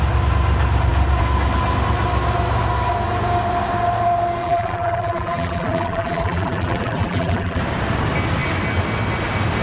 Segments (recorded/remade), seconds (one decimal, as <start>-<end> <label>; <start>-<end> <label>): 0.0-4.4 recorded; 4.4-7.6 remade; 7.6-9.6 recorded